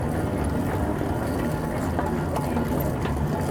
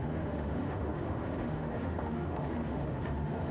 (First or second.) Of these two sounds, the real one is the first